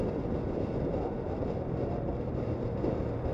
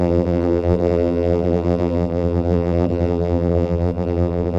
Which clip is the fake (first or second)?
second